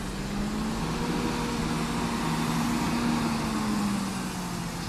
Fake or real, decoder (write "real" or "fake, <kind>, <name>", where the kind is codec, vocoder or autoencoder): real